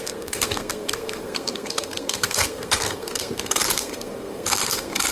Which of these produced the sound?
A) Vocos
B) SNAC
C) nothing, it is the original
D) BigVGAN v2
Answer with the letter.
B